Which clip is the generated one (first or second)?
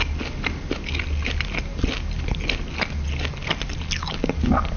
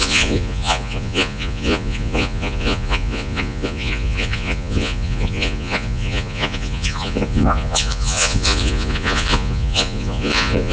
second